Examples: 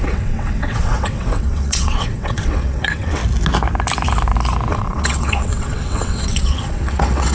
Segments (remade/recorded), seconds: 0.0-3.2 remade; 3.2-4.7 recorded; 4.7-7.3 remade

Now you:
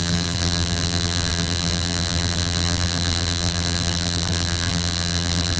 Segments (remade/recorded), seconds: 0.0-5.6 remade

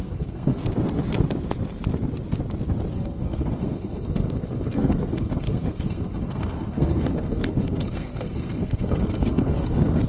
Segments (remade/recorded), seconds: 0.0-0.6 remade; 0.6-2.9 recorded; 2.9-10.1 remade

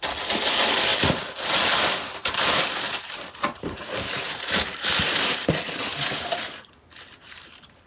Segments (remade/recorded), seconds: 0.0-2.2 recorded; 2.2-5.5 remade; 5.5-5.9 recorded; 5.9-6.6 remade; 6.6-7.9 recorded

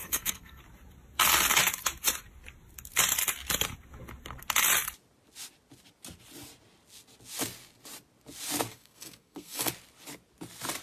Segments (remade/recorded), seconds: 0.0-0.6 remade; 0.6-8.7 recorded; 8.7-9.7 remade; 9.7-10.8 recorded

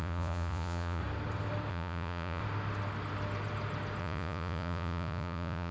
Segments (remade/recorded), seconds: 0.0-1.0 remade; 1.0-1.7 recorded; 1.7-2.4 remade; 2.4-4.0 recorded; 4.0-5.7 remade

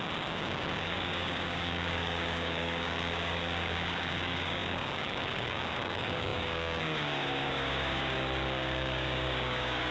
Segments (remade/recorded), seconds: 0.0-9.9 remade